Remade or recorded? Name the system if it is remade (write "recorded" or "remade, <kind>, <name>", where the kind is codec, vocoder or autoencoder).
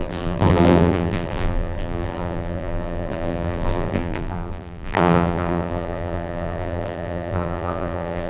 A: remade, vocoder, BigVGAN v2